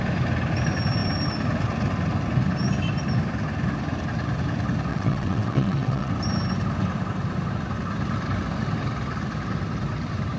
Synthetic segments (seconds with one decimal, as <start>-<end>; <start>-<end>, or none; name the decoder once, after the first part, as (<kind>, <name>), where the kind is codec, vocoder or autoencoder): 4.9-6.1 (vocoder, WaveNeXt)

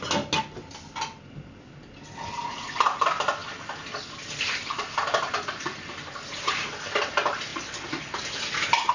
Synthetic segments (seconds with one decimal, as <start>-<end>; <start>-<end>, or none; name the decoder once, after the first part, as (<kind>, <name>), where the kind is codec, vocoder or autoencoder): none

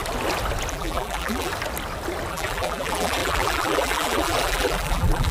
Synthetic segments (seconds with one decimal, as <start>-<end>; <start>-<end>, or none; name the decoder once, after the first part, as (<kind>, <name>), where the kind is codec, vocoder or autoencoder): 0.7-1.5 (vocoder, BigVGAN v2); 2.3-5.3